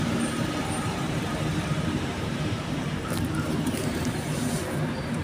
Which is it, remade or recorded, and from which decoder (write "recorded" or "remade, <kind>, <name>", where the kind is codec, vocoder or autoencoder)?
remade, vocoder, BigVGAN v2